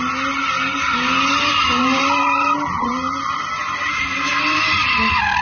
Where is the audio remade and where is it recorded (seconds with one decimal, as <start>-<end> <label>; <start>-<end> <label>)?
0.0-1.5 recorded; 1.5-3.4 remade; 3.4-5.4 recorded